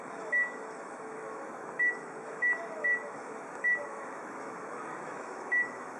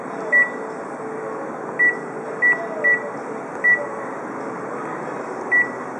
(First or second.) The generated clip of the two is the first